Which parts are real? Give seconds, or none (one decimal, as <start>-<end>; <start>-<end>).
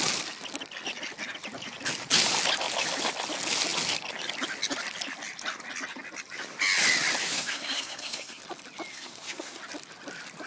0.0-7.2; 8.4-8.9; 9.6-10.5